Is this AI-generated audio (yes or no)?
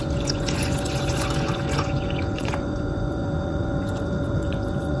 yes